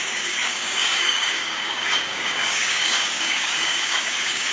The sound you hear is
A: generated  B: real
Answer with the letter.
A